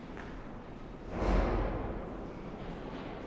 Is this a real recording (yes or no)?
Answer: yes